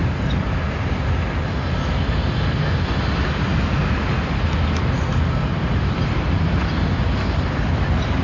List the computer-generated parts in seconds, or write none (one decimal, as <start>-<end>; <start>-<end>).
0.0-1.0; 5.5-8.2